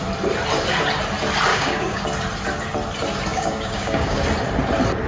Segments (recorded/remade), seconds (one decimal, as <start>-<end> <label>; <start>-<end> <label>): 0.0-1.5 recorded; 1.5-2.0 remade; 2.0-3.3 recorded; 3.3-4.2 remade; 4.2-5.1 recorded